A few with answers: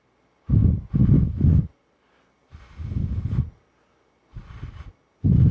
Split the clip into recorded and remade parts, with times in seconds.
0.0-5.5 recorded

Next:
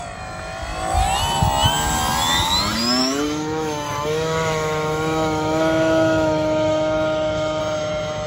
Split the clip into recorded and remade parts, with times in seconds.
0.0-3.0 recorded; 3.0-7.6 remade; 7.6-8.3 recorded